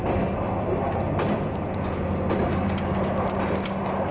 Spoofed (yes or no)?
no